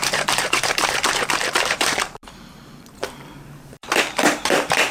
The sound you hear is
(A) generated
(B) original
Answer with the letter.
A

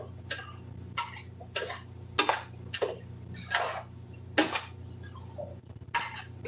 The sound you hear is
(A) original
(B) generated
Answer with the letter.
A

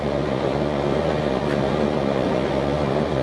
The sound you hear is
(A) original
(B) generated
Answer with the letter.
B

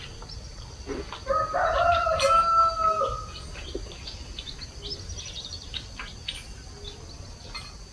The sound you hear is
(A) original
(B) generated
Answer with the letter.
A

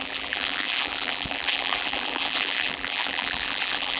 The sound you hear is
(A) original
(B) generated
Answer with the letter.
B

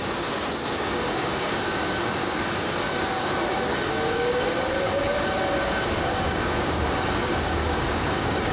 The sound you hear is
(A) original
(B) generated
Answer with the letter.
B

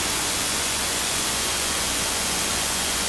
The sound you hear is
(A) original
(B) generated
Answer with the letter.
B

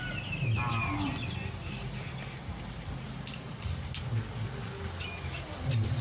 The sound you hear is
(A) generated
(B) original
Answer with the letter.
B